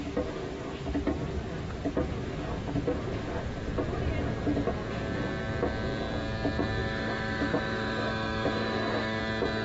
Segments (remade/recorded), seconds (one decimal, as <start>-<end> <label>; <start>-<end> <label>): 0.0-6.8 recorded; 6.8-9.2 remade; 9.2-9.6 recorded